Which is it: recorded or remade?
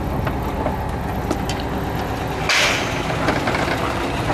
recorded